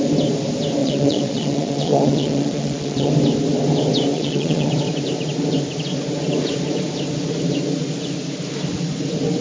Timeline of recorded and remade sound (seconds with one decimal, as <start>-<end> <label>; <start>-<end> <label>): 0.0-0.8 recorded; 0.8-3.1 remade; 3.1-4.1 recorded; 4.1-4.7 remade; 4.7-9.4 recorded